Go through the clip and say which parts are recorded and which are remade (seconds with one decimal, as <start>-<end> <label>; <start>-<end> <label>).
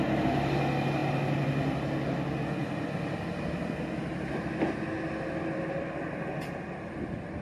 0.0-7.4 recorded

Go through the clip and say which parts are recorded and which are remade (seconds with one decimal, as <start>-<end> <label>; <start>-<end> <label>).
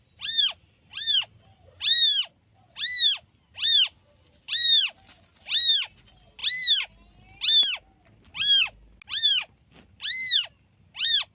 0.0-11.3 recorded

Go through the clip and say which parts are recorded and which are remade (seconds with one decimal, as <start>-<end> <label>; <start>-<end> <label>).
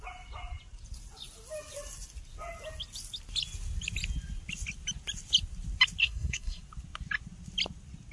0.0-6.0 recorded; 6.0-6.6 remade; 6.6-8.1 recorded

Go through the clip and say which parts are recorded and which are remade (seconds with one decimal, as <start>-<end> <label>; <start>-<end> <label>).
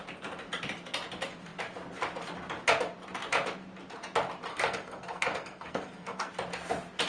0.0-4.5 recorded; 4.5-6.3 remade; 6.3-7.1 recorded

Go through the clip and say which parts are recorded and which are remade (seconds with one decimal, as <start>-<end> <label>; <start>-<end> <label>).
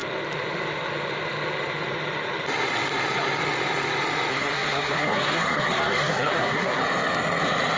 0.0-4.3 recorded; 4.3-6.8 remade; 6.8-7.8 recorded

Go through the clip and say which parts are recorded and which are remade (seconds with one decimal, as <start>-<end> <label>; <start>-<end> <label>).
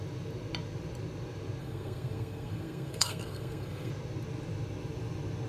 0.0-1.6 recorded; 1.6-3.9 remade; 3.9-5.5 recorded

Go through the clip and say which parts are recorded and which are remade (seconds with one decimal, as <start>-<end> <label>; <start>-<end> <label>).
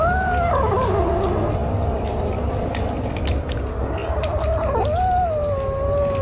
0.0-6.2 recorded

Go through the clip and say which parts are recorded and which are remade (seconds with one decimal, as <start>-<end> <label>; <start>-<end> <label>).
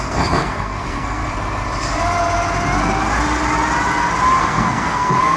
0.0-1.2 remade; 1.2-4.4 recorded; 4.4-5.4 remade